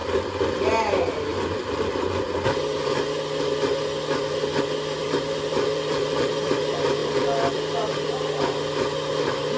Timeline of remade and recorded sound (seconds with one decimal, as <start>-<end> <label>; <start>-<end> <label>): 0.0-0.6 remade; 0.6-1.3 recorded; 1.3-2.2 remade; 2.2-5.0 recorded; 5.0-6.6 remade; 6.6-7.0 recorded; 7.0-7.9 remade; 7.9-9.6 recorded